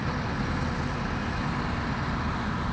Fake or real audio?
real